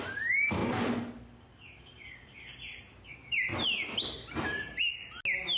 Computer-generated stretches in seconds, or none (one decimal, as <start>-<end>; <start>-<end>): 0.0-0.6; 1.8-3.5

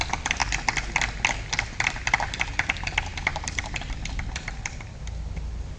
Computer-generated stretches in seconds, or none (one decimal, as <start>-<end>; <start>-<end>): 3.3-5.0

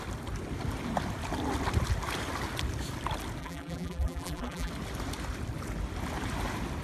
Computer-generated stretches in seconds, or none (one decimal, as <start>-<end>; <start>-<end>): 3.4-4.7

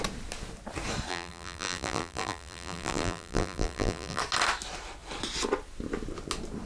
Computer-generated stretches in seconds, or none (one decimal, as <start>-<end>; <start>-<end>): 1.1-4.2

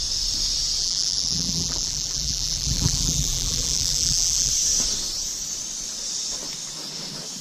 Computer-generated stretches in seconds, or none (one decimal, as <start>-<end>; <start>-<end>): 0.8-4.5

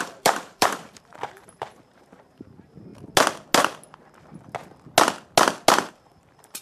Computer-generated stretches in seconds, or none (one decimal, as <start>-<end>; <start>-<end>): 0.0-2.9; 5.9-6.6

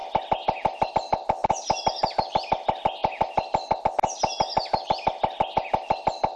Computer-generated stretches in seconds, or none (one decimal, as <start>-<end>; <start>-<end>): 1.4-2.1